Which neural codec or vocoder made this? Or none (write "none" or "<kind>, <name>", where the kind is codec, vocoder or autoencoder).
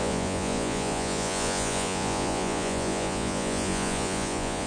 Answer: vocoder, Vocos